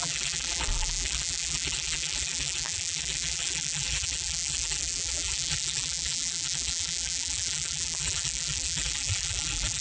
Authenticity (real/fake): fake